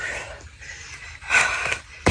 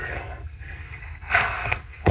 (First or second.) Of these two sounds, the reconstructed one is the second